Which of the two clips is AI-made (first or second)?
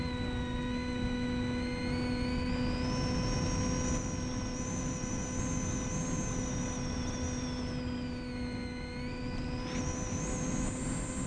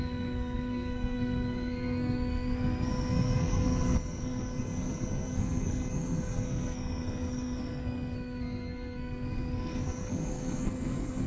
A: second